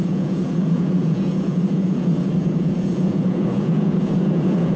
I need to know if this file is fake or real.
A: fake